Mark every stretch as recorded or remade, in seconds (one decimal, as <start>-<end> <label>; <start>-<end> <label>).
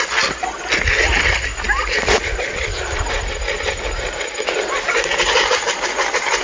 0.0-6.4 recorded